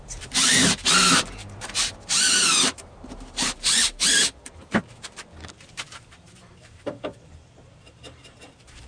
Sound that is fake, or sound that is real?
fake